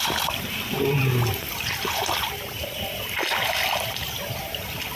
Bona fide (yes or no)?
yes